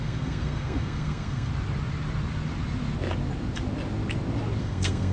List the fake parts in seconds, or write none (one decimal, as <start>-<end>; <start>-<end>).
0.0-1.5; 4.6-5.1